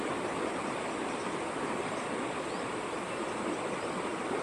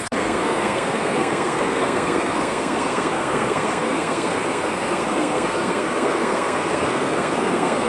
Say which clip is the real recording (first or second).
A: first